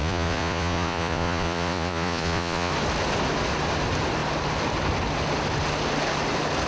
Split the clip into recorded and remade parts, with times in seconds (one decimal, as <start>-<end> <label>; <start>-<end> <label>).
0.0-2.7 remade; 2.7-6.7 recorded